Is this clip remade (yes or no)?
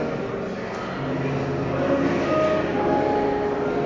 no